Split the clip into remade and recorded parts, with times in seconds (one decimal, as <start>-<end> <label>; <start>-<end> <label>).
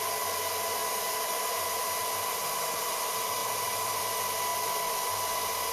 0.0-3.4 recorded; 3.4-4.0 remade; 4.0-5.7 recorded